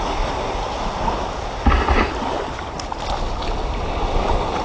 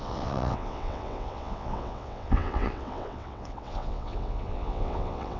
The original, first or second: first